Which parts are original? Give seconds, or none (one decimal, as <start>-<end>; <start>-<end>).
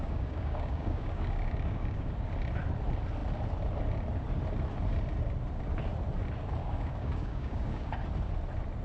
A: 2.1-6.6; 7.9-8.8